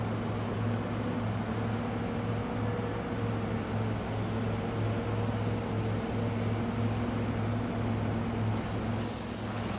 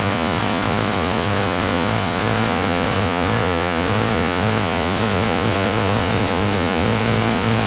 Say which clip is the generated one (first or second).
second